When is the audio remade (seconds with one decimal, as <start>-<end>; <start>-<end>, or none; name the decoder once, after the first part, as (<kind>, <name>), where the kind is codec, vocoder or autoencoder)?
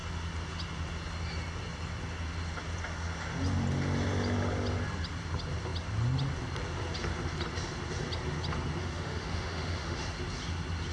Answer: 8.8-10.0 (autoencoder, DAC-VAE)